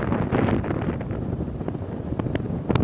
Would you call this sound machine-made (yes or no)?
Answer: no